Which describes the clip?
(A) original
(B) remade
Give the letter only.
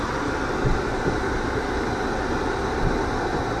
A